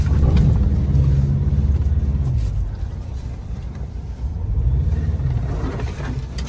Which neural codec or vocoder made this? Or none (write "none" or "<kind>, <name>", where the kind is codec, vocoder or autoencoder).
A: none